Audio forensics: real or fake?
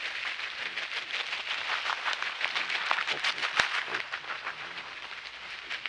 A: real